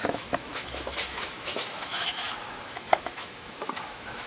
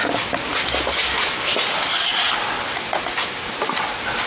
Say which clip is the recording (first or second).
second